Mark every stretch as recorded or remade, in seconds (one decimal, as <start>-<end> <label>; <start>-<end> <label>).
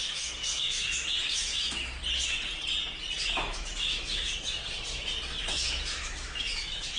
0.0-2.0 remade; 2.0-3.3 recorded; 3.3-4.6 remade; 4.6-5.5 recorded; 5.5-7.0 remade